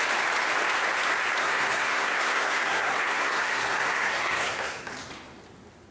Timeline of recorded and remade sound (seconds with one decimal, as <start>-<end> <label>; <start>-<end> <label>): 0.0-1.4 recorded; 1.4-4.9 remade; 4.9-5.9 recorded